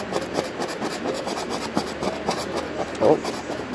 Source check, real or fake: real